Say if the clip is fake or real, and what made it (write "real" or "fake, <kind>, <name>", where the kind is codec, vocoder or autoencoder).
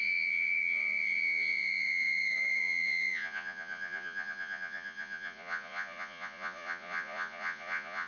fake, vocoder, Vocos